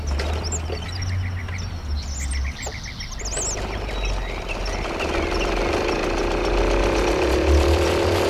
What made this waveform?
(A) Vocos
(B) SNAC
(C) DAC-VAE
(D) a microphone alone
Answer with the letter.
D